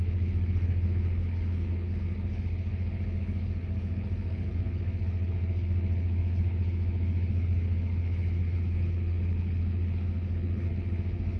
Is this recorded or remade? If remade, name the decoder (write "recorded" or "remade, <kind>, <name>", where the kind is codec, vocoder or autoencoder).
remade, codec, HILCodec